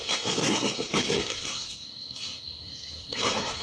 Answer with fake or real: fake